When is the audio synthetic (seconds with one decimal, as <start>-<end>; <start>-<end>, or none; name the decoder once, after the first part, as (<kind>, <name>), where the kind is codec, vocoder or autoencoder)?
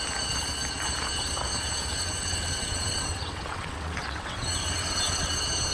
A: 1.9-5.3 (vocoder, WaveNeXt)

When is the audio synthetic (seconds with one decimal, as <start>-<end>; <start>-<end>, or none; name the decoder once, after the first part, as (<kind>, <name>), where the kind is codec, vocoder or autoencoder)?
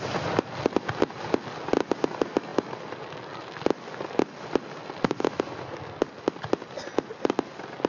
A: none